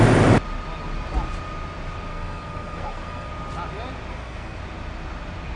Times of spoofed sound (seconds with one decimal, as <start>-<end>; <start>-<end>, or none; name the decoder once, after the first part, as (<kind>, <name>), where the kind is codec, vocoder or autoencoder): 2.1-3.3 (codec, SNAC); 4.1-4.6